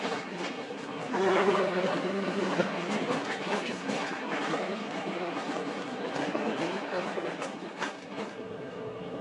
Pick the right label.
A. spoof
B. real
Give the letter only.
A